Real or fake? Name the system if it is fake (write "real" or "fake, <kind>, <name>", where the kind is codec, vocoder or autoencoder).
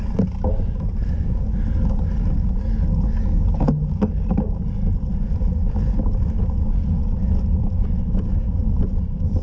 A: real